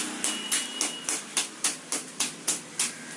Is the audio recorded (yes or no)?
yes